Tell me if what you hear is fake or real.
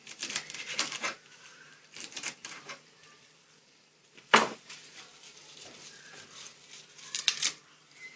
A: fake